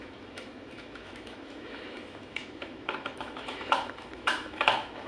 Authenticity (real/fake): fake